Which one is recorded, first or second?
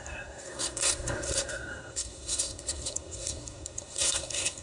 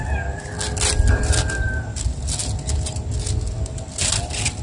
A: second